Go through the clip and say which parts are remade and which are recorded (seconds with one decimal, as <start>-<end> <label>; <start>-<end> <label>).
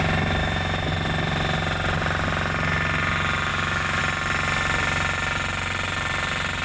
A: 0.0-0.4 recorded; 0.4-0.9 remade; 0.9-3.5 recorded; 3.5-4.0 remade; 4.0-6.6 recorded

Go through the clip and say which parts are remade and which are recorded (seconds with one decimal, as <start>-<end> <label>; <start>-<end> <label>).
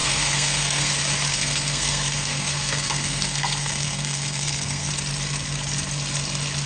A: 0.0-0.9 remade; 0.9-1.3 recorded; 1.3-4.9 remade; 4.9-6.7 recorded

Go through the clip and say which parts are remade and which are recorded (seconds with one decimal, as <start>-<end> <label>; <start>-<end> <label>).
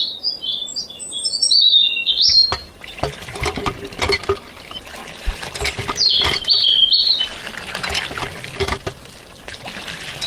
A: 0.0-0.6 recorded; 0.6-1.9 remade; 1.9-10.3 recorded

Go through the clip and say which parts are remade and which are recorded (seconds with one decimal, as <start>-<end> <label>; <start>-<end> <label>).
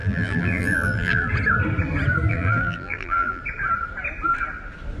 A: 0.0-1.3 remade; 1.3-2.3 recorded; 2.3-3.4 remade; 3.4-5.0 recorded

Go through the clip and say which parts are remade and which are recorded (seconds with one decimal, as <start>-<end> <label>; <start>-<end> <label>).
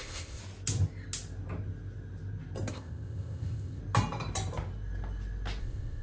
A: 0.0-0.4 remade; 0.4-2.7 recorded; 2.7-3.8 remade; 3.8-5.6 recorded; 5.6-6.0 remade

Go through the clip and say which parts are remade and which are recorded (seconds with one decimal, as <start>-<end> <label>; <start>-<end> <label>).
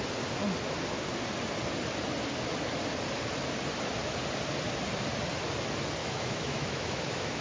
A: 0.0-6.0 recorded; 6.0-7.4 remade